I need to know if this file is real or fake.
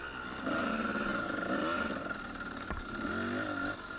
real